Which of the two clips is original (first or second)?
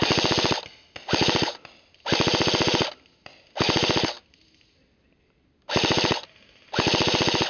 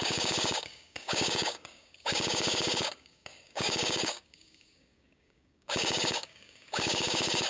first